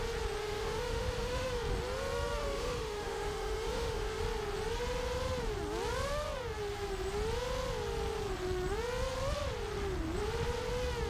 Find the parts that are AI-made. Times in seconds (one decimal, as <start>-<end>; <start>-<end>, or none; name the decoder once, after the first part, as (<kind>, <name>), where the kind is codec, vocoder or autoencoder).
0.4-1.6 (autoencoder, DAC-VAE); 2.4-4.2